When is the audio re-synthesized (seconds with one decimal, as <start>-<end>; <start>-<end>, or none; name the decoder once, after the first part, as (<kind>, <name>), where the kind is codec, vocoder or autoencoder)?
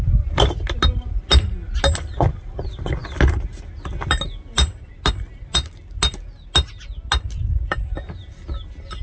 none